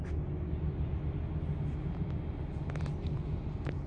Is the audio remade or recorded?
recorded